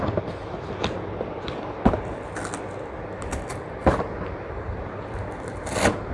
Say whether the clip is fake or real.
real